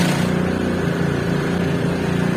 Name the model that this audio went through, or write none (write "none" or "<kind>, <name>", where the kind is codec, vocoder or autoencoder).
none